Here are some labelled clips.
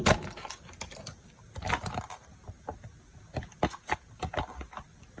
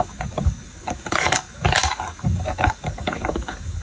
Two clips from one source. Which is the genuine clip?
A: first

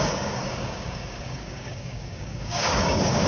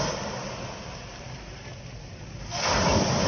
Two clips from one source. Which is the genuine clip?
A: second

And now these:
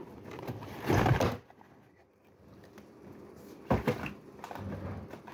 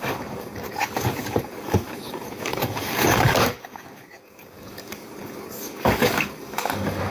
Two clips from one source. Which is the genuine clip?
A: first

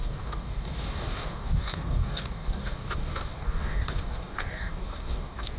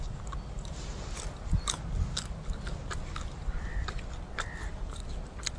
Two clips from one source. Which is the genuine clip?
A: second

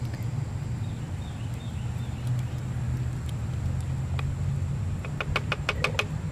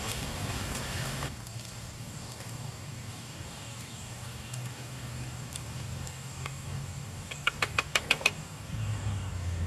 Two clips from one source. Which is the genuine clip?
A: first